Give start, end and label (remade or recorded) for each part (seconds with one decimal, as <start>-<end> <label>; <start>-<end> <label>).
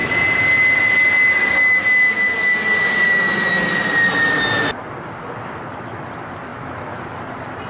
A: 0.0-7.7 recorded